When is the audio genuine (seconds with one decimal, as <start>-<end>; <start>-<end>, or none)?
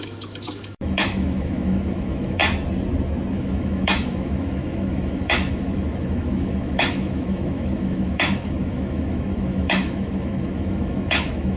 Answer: 2.4-3.3